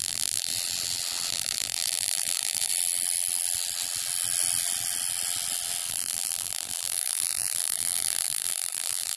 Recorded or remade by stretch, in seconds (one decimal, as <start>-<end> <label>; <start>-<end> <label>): 0.0-0.5 remade; 0.5-1.3 recorded; 1.3-2.7 remade; 2.7-5.9 recorded; 5.9-9.2 remade